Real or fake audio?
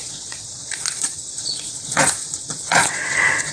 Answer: fake